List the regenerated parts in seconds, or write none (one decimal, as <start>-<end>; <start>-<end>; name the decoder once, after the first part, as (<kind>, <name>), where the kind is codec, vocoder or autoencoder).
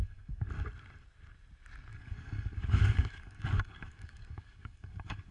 0.0-0.5 (codec, DAC); 1.9-5.3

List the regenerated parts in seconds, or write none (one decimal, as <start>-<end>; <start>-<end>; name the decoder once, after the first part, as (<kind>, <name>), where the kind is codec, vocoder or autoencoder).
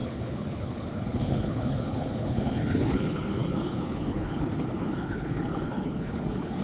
0.0-6.6 (codec, HILCodec)